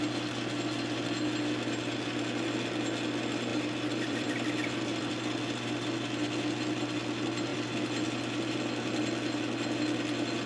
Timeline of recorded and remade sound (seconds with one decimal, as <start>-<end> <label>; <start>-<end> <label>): 0.0-3.5 recorded; 3.5-5.1 remade; 5.1-7.5 recorded; 7.5-8.6 remade; 8.6-10.5 recorded